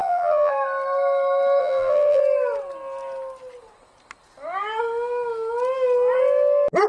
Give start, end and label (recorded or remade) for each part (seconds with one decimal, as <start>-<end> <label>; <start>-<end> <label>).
0.0-0.5 remade; 0.5-1.6 recorded; 1.6-2.2 remade; 2.2-6.9 recorded